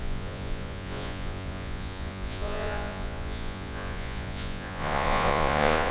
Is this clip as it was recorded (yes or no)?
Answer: no